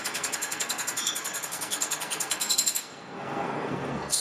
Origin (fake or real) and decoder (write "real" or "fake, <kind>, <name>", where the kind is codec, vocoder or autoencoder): fake, codec, SNAC